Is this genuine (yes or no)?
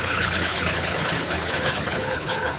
no